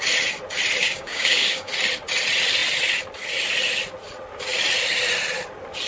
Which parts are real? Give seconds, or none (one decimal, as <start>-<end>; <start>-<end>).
0.0-0.8; 1.7-5.9